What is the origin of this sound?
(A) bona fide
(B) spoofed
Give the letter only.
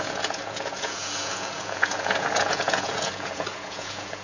B